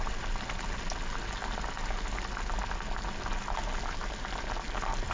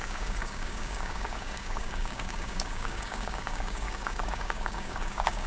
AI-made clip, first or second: second